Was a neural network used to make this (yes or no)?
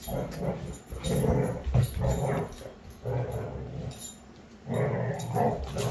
no